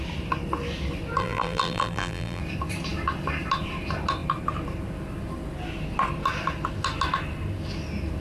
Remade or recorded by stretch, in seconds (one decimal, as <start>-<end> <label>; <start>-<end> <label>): 0.0-1.2 recorded; 1.2-2.4 remade; 2.4-8.2 recorded